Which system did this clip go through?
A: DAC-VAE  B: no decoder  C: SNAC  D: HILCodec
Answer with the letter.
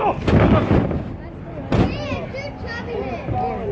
B